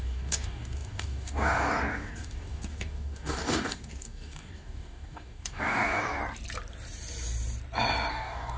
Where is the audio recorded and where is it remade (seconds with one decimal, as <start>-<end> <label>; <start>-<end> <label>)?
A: 0.0-6.2 remade; 6.2-8.1 recorded; 8.1-8.6 remade